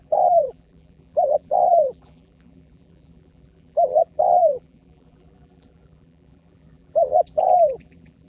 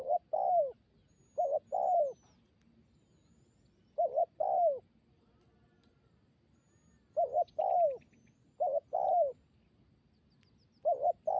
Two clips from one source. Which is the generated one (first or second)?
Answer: first